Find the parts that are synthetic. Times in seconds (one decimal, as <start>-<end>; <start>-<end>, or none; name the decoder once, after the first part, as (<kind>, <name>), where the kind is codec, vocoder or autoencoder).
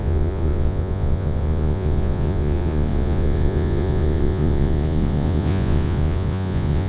0.0-6.9 (vocoder, Vocos)